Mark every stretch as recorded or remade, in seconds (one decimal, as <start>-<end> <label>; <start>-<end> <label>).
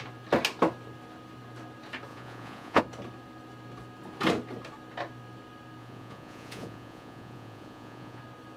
0.0-2.1 recorded; 2.1-2.8 remade; 2.8-5.8 recorded; 5.8-8.2 remade; 8.2-8.6 recorded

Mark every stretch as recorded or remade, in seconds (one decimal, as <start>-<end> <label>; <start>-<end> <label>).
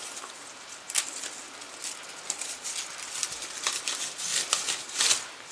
0.0-5.5 recorded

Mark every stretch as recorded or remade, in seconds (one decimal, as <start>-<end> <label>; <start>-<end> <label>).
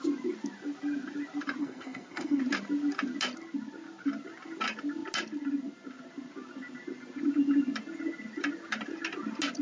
0.0-1.6 recorded; 1.6-2.4 remade; 2.4-9.6 recorded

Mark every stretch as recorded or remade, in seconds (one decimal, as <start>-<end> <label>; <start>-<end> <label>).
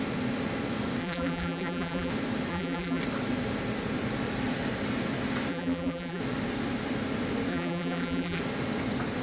0.0-1.0 recorded; 1.0-2.1 remade; 2.1-2.5 recorded; 2.5-3.0 remade; 3.0-5.5 recorded; 5.5-6.2 remade; 6.2-7.5 recorded; 7.5-8.4 remade; 8.4-9.2 recorded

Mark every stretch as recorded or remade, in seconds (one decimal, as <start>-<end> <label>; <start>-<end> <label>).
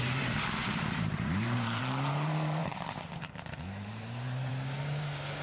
0.0-0.6 recorded; 0.6-1.8 remade; 1.8-2.6 recorded; 2.6-4.5 remade; 4.5-5.4 recorded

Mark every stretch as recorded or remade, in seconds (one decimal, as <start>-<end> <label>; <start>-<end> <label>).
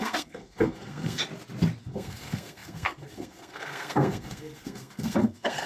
0.0-1.2 remade; 1.2-1.8 recorded; 1.8-5.7 remade